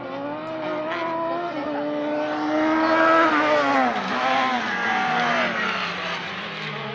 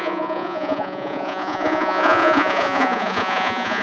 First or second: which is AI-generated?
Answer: second